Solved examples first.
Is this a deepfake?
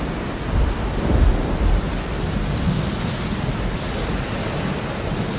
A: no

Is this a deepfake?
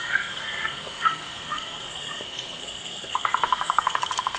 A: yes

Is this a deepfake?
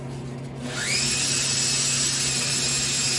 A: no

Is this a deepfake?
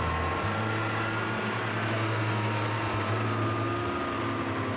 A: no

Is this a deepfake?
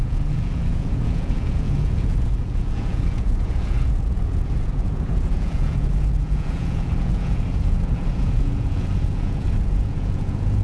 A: yes